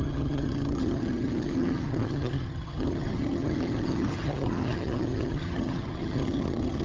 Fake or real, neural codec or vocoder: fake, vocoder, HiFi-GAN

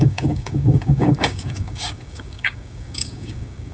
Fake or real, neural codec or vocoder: fake, codec, DAC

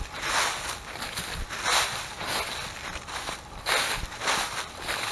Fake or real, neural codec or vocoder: real